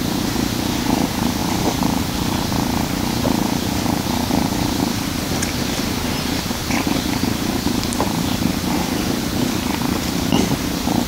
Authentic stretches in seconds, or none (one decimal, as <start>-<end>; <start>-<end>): 0.0-1.4; 2.0-6.6; 9.2-11.1